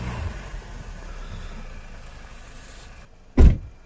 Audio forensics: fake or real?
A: real